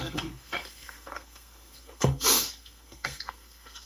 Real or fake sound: fake